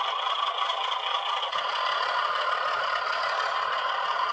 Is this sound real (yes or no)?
no